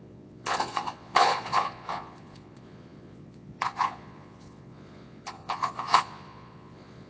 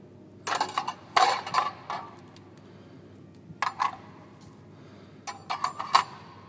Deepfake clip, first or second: first